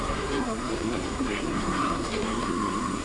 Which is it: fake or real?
fake